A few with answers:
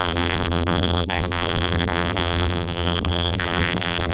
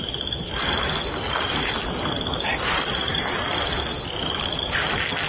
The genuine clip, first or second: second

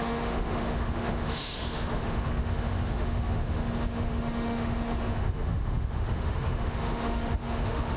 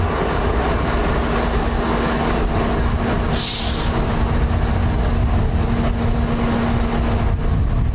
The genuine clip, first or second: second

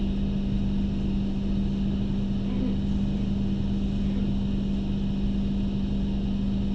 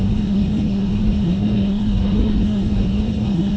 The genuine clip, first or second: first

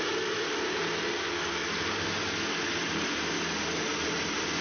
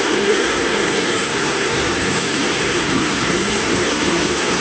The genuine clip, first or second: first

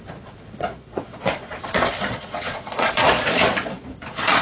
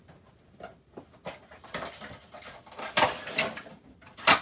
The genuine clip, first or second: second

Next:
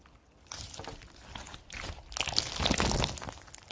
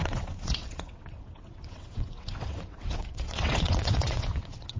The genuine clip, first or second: first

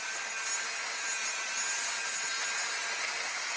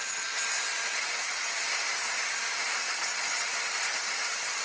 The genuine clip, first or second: first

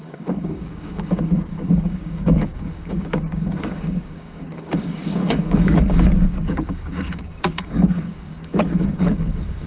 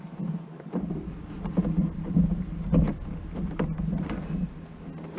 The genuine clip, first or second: second